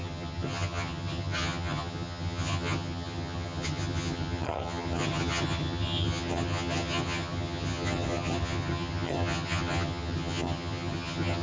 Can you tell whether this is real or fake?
fake